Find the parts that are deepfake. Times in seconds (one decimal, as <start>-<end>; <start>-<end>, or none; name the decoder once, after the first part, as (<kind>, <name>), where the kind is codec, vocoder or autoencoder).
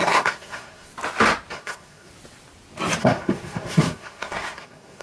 0.0-0.9 (codec, SNAC); 1.5-2.1; 3.0-5.0